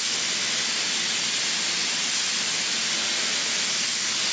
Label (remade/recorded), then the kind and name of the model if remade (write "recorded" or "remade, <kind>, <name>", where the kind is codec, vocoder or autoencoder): recorded